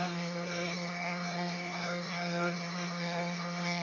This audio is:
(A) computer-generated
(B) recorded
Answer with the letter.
A